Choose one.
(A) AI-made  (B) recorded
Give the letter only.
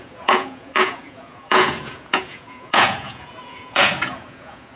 A